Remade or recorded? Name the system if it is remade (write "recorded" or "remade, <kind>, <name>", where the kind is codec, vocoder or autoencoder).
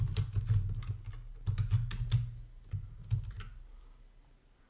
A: recorded